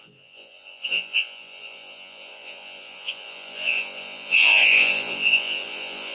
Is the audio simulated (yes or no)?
yes